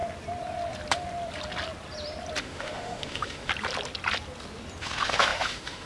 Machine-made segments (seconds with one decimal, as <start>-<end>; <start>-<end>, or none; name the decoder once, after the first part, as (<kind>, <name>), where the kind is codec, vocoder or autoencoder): 2.4-3.5 (autoencoder, DAC-VAE); 4.8-5.9